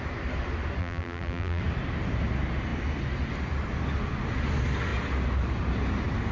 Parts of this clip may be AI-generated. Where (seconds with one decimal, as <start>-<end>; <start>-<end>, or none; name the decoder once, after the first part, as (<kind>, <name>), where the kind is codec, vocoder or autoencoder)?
0.8-1.6 (vocoder, BigVGAN v2)